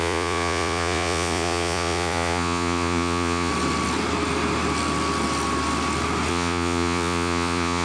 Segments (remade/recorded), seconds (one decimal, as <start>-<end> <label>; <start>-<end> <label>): 0.0-3.5 remade; 3.5-6.3 recorded; 6.3-7.8 remade